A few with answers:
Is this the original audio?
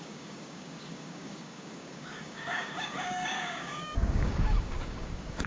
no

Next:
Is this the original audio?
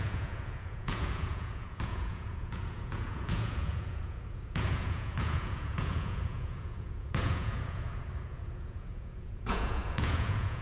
no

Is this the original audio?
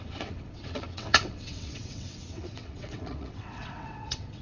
no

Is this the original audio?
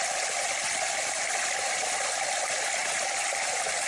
no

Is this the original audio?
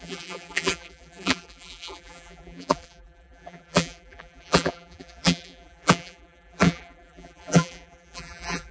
no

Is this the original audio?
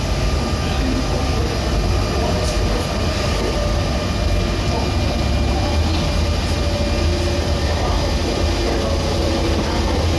yes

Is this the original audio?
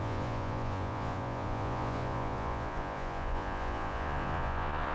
no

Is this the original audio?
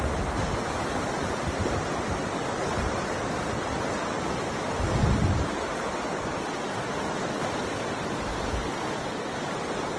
yes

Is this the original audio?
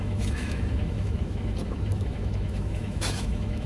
no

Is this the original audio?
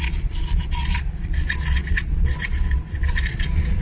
no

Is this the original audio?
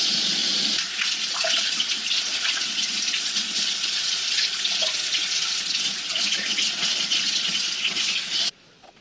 no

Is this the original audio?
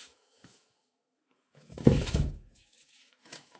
no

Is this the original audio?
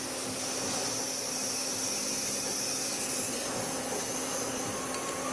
yes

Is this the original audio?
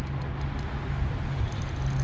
yes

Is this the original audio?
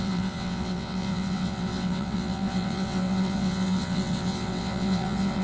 no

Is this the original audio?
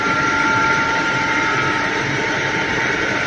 no